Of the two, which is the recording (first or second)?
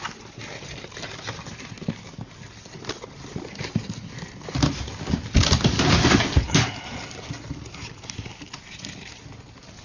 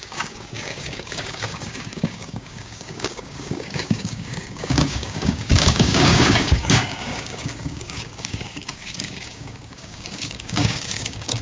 first